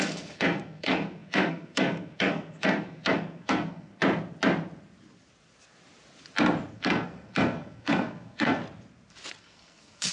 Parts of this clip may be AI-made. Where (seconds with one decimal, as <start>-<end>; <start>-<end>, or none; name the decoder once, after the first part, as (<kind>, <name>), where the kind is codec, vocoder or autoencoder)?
0.0-3.9 (codec, SNAC); 6.7-8.6; 9.4-10.1